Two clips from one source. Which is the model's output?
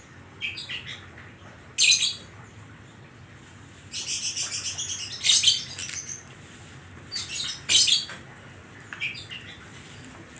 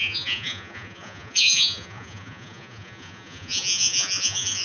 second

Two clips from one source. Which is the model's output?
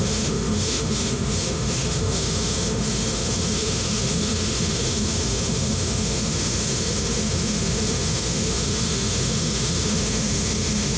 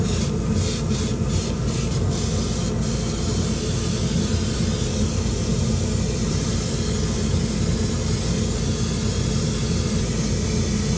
first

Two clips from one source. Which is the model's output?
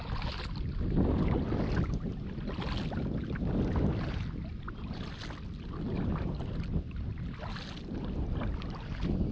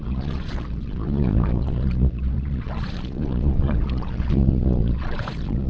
second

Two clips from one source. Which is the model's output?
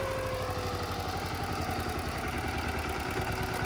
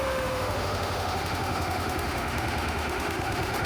second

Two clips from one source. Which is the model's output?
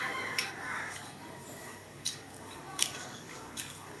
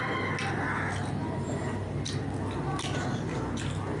first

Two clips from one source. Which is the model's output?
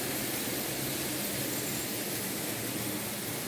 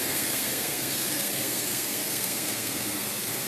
second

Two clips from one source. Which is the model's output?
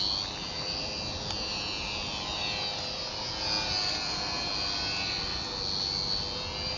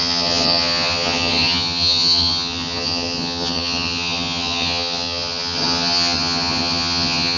second